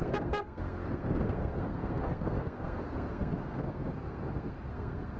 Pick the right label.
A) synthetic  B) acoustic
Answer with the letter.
A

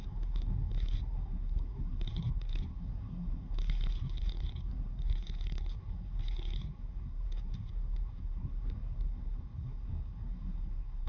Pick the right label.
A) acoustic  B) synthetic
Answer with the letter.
B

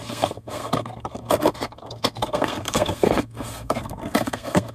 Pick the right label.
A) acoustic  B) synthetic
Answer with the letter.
B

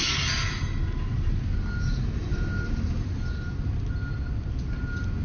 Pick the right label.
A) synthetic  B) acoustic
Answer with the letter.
B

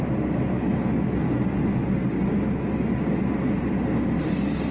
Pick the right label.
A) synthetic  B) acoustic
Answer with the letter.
B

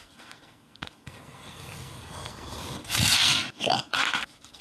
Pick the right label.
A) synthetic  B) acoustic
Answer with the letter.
A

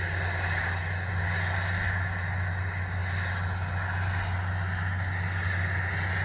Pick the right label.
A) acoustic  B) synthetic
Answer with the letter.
A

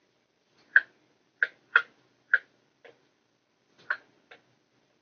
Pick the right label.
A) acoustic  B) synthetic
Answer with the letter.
A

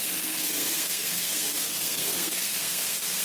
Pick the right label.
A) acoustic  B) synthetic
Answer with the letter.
B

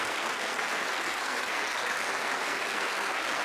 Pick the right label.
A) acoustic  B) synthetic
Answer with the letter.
B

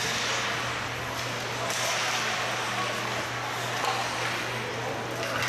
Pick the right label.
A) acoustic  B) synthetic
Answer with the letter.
A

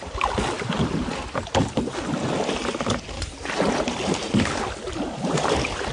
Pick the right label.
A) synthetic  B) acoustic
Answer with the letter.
B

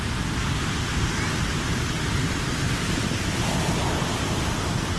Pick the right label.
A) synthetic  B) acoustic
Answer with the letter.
B